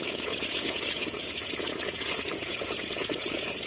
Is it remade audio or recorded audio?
remade